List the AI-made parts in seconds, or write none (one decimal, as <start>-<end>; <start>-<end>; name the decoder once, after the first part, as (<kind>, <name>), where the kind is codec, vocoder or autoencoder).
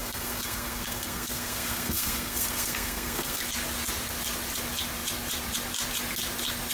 0.0-3.4 (codec, SNAC)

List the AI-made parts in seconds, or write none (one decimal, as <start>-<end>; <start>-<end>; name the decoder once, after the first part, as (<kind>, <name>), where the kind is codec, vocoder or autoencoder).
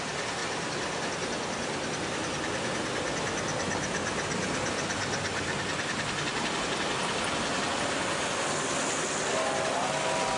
none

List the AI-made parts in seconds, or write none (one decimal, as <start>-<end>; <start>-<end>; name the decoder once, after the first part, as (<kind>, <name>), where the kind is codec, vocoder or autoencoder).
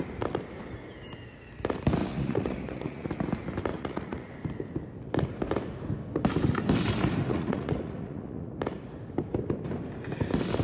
2.0-3.1 (vocoder, Vocos); 3.7-4.3; 7.3-8.5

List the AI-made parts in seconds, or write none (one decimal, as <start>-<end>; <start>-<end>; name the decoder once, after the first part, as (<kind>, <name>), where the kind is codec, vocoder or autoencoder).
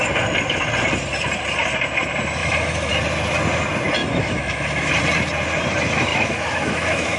2.4-2.9 (autoencoder, DAC-VAE); 4.0-4.9; 6.1-7.2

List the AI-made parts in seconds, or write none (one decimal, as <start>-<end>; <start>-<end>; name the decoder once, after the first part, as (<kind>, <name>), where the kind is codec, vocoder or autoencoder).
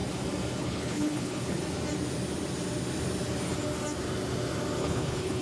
0.6-1.6 (codec, HILCodec); 4.8-5.4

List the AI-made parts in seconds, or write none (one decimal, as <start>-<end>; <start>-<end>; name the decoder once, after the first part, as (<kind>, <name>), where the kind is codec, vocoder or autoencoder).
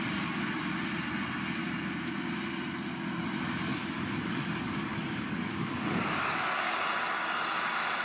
3.7-6.8 (codec, DAC)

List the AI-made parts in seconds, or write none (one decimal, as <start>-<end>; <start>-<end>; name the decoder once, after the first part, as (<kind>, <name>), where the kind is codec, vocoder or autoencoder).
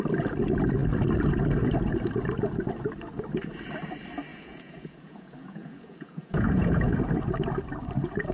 4.3-6.9 (vocoder, Vocos)